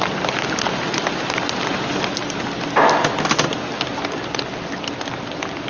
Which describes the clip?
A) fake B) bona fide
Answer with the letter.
B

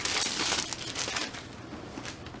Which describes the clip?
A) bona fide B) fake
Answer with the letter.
A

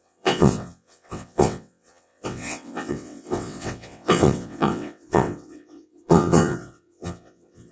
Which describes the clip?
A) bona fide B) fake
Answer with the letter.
B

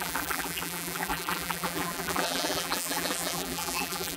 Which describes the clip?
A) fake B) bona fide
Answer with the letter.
A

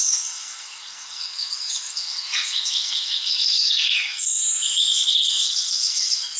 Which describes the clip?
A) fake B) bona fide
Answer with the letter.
A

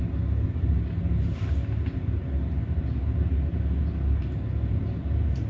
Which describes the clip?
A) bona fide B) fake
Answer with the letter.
A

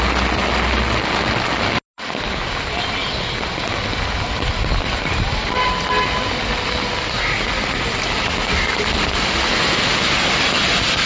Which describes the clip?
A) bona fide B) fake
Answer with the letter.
A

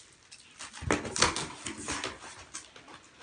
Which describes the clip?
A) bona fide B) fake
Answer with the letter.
A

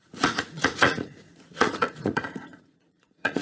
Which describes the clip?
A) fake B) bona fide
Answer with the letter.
A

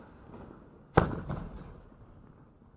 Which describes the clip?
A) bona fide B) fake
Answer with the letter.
A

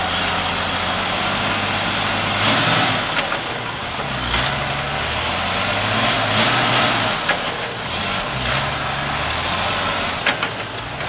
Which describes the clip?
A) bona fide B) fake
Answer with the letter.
A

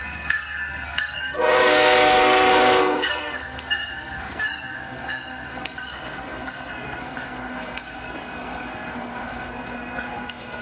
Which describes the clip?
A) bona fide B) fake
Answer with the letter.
B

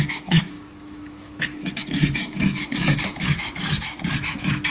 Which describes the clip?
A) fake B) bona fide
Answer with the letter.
A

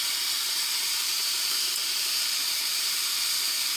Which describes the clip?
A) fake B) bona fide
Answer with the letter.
A